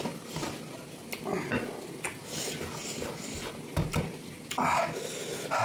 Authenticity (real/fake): real